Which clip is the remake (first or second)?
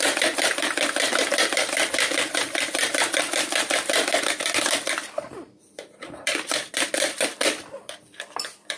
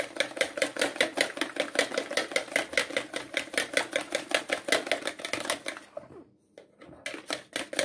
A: first